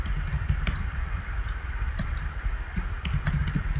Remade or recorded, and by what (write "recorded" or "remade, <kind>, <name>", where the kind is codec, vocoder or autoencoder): recorded